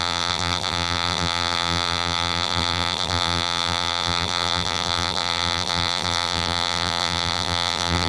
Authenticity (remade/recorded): remade